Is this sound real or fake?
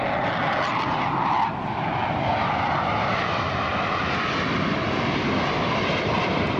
real